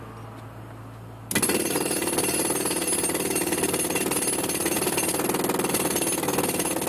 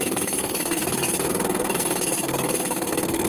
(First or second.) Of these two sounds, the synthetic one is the second